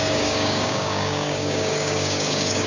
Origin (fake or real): fake